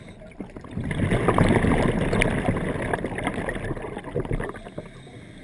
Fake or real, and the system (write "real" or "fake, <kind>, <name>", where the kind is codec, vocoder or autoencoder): real